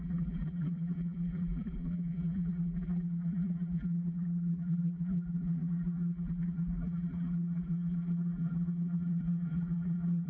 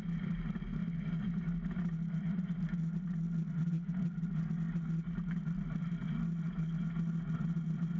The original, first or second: second